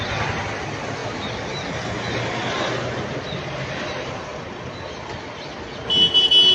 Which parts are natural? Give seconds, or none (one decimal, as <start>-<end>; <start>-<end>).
0.0-6.5